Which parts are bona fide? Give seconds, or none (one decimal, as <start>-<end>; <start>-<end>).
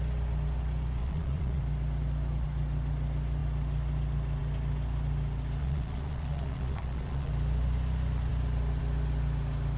0.0-1.0; 1.6-5.6; 7.3-9.8